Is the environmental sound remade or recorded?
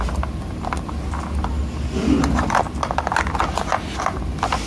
recorded